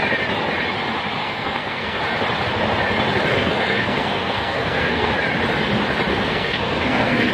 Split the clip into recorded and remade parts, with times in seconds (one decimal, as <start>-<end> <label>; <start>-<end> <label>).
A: 0.0-1.2 recorded; 1.2-2.0 remade; 2.0-3.3 recorded; 3.3-5.1 remade; 5.1-6.1 recorded; 6.1-7.3 remade